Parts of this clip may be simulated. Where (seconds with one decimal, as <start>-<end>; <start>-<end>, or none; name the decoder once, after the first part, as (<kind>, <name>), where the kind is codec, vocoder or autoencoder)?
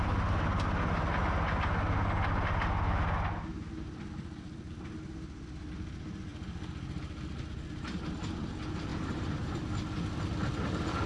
8.9-9.6 (vocoder, BigVGAN v2)